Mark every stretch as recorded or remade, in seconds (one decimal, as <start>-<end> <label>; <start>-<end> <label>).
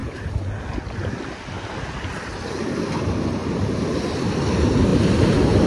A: 0.0-5.7 recorded